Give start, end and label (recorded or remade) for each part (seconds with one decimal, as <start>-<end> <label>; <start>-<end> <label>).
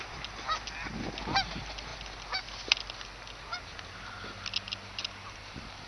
0.0-5.9 recorded